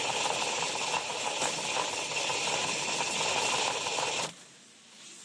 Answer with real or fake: real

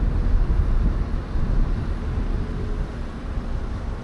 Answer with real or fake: real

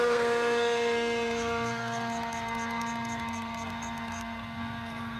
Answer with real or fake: fake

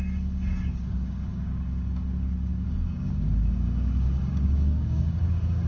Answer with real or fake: fake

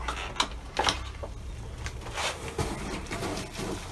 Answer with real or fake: real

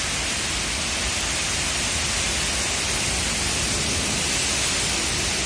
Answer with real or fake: real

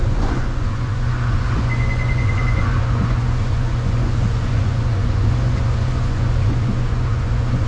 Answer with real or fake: fake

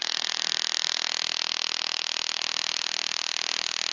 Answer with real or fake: real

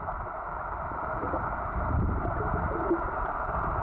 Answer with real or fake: real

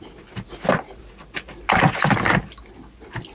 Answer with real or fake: real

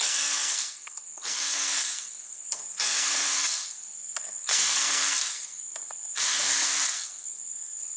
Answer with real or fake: fake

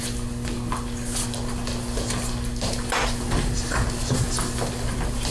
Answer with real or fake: real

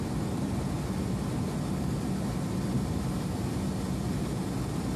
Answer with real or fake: real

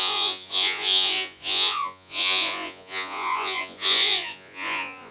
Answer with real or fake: fake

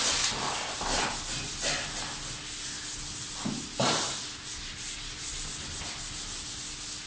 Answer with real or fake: real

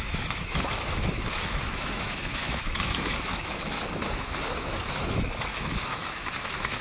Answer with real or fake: fake